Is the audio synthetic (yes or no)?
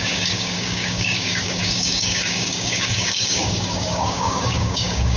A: yes